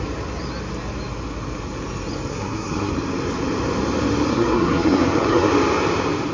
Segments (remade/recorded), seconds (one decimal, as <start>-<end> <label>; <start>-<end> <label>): 0.0-2.3 recorded; 2.3-2.9 remade; 2.9-4.3 recorded; 4.3-5.5 remade; 5.5-6.3 recorded